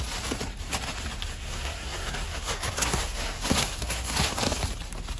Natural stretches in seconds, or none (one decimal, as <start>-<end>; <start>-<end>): 0.0-1.3; 4.4-5.2